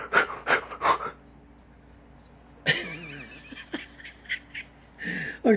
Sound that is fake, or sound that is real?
real